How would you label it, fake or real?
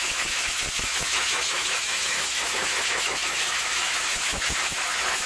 fake